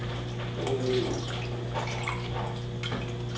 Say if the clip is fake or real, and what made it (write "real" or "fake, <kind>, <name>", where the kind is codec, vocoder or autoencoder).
real